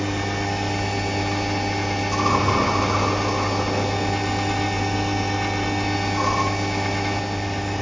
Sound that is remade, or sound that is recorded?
recorded